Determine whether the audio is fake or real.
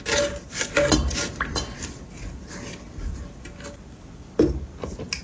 real